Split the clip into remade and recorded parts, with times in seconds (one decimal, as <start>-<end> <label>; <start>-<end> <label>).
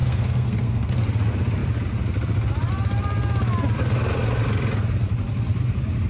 0.0-0.9 remade; 0.9-6.1 recorded